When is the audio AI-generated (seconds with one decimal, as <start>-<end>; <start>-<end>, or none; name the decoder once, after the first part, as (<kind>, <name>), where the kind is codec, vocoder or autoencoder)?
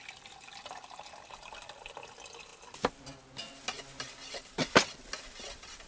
none